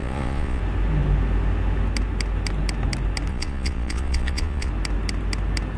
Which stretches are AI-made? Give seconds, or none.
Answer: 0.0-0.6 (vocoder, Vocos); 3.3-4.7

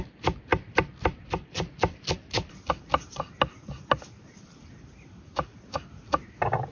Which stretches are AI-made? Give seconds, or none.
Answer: none

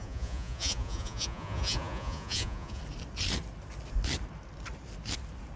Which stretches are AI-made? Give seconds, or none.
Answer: 0.0-2.8 (vocoder, Vocos)

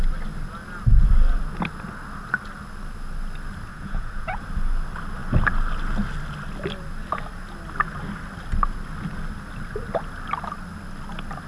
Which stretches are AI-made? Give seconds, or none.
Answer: 3.7-4.4 (vocoder, Vocos)